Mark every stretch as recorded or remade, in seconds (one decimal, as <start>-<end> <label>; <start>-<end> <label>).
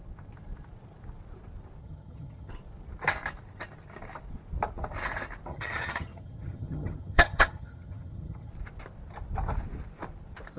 0.0-1.8 recorded; 1.8-2.5 remade; 2.5-5.5 recorded; 5.5-8.5 remade; 8.5-10.6 recorded